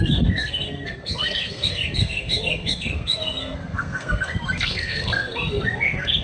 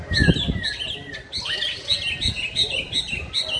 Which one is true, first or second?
second